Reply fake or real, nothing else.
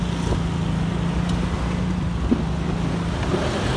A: real